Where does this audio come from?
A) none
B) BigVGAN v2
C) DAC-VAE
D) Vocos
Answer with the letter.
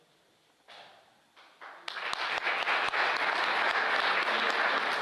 A